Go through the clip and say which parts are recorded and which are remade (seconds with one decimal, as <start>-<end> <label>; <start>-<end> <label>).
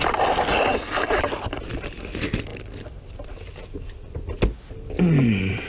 0.0-5.7 recorded